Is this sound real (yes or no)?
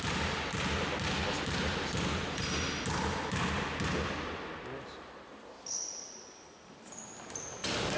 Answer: yes